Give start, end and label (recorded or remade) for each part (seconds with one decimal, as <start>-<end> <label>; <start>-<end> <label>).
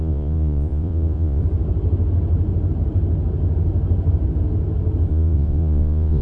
0.0-1.4 remade; 1.4-5.1 recorded; 5.1-6.2 remade